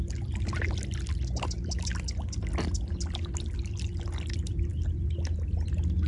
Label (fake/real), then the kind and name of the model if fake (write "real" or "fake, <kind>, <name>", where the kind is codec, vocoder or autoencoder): real